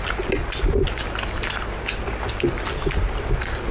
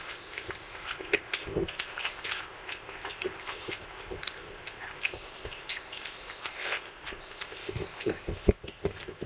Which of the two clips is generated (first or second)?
second